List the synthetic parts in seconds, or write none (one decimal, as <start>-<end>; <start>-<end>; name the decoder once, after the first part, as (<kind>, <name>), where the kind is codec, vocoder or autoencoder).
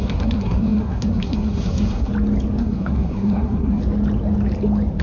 0.0-2.1 (codec, SNAC); 2.6-3.8